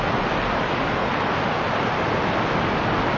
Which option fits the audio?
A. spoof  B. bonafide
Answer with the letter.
B